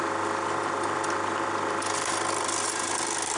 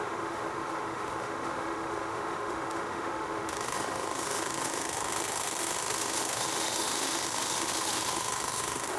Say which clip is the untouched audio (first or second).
first